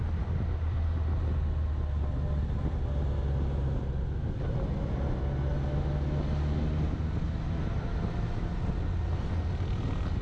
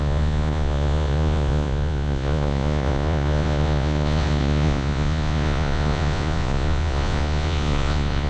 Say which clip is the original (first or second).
first